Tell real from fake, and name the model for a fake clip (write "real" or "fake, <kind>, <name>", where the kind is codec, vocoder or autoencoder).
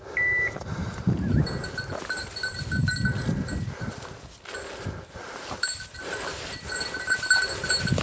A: fake, vocoder, BigVGAN v2